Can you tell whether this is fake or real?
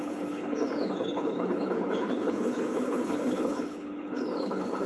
fake